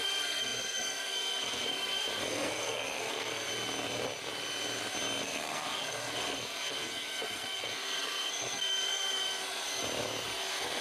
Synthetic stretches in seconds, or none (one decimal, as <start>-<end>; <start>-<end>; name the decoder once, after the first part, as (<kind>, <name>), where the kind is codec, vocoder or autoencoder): 0.0-3.5 (codec, SNAC); 5.2-9.8; 10.4-10.8